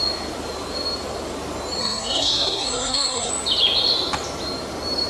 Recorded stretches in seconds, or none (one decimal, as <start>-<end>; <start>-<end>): 0.0-1.8; 3.3-5.1